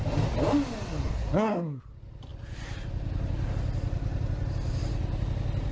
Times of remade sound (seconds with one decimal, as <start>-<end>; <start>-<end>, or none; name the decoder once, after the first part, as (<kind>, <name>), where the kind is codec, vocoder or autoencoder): 1.1-1.8 (codec, SNAC)